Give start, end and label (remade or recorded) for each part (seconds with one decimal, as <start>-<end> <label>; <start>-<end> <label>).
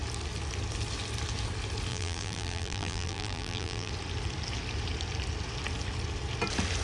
0.0-1.9 recorded; 1.9-3.9 remade; 3.9-6.8 recorded